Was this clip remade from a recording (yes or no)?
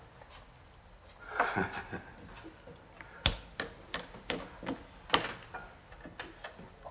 no